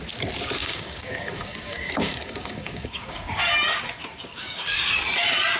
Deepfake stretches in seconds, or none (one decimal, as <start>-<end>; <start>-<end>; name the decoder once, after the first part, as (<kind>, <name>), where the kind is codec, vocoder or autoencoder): 0.6-3.3 (codec, DAC); 4.2-4.8

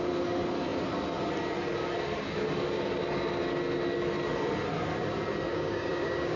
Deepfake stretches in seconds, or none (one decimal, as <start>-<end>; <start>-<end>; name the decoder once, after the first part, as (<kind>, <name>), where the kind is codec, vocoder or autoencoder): 5.5-6.4 (codec, DAC)

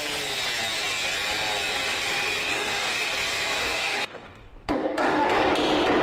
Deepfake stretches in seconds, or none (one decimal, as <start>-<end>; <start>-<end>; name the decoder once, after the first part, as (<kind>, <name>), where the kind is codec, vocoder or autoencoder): 2.5-3.1 (codec, DAC); 3.6-5.5

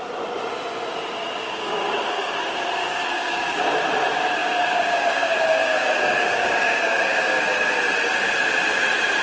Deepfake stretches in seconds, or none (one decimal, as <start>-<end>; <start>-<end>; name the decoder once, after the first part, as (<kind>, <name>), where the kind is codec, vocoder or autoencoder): 1.4-2.3 (codec, DAC); 2.8-3.6; 4.4-7.7

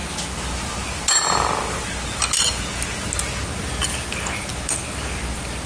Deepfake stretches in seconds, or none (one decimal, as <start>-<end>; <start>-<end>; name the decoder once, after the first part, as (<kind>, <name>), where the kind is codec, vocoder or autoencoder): none

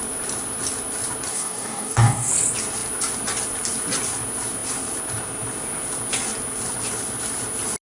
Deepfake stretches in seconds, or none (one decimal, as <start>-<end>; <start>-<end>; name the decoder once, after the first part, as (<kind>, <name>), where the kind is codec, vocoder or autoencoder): 1.3-2.3 (codec, DAC)

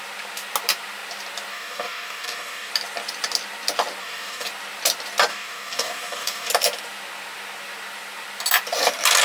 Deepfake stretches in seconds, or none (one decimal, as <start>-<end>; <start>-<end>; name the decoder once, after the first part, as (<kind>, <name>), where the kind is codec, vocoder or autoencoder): 1.5-2.7 (codec, DAC); 4.0-4.5; 5.3-6.5